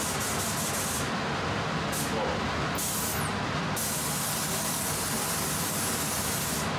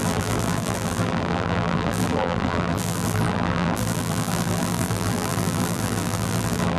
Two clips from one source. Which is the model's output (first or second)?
second